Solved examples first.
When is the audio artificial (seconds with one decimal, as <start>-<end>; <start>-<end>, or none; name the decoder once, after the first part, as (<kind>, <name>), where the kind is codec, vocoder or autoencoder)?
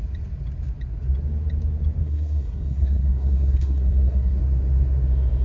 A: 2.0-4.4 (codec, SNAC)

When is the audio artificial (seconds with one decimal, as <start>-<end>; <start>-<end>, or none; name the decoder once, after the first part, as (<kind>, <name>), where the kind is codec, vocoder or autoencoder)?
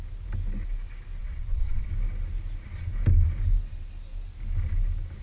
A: 1.2-1.9 (vocoder, WaveNeXt)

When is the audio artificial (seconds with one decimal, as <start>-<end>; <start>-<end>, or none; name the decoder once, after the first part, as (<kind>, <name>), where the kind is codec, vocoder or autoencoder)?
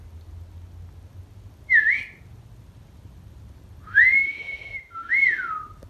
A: 4.2-5.1 (autoencoder, DAC-VAE)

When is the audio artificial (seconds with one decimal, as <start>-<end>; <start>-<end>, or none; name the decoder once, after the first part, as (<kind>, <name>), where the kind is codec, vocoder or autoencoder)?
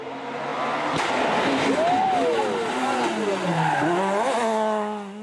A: none